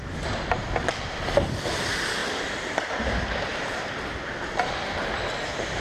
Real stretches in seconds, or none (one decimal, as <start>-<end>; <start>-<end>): 0.0-2.2; 3.1-3.5; 5.0-5.8